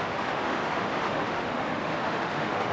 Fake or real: fake